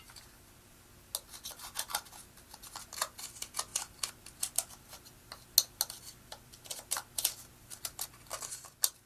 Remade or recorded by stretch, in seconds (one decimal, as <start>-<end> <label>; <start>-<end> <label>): 0.0-9.1 recorded